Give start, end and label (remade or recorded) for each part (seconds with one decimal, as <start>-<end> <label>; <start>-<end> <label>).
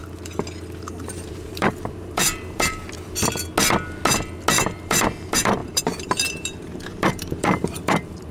0.0-1.1 recorded; 1.1-2.8 remade; 2.8-4.7 recorded; 4.7-8.3 remade